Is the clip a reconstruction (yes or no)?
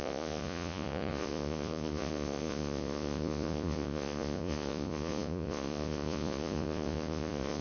yes